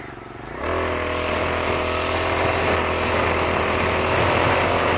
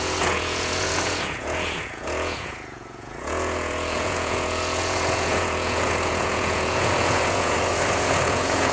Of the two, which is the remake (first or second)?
second